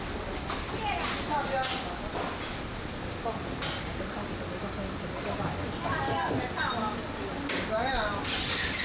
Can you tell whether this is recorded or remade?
recorded